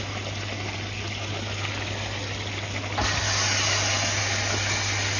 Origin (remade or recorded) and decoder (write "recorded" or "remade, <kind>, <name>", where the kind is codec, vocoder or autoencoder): recorded